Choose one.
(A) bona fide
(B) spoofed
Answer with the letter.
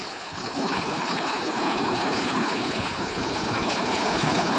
B